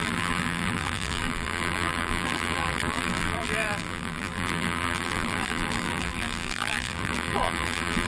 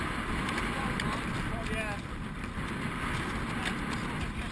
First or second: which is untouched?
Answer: second